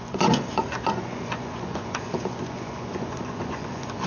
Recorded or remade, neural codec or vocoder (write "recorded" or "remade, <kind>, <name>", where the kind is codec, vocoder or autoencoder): remade, vocoder, Vocos